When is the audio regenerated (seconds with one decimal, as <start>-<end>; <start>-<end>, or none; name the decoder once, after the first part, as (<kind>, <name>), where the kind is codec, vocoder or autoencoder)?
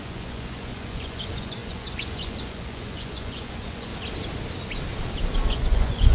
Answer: 0.0-3.9 (vocoder, Vocos); 5.5-6.1